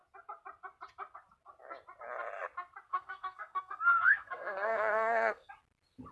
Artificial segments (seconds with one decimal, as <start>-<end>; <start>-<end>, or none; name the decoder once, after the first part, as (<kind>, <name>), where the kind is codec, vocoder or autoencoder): 2.9-5.5 (codec, SNAC)